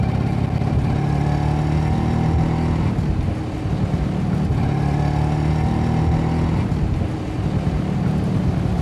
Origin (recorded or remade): recorded